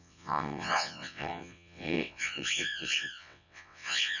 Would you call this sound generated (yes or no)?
yes